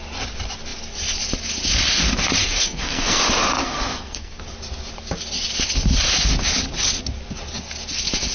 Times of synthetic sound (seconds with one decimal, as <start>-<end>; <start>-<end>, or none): 2.4-3.2; 3.6-4.4